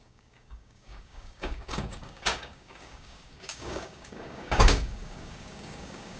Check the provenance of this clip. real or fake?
fake